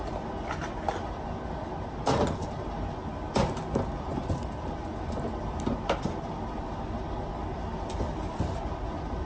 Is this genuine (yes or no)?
yes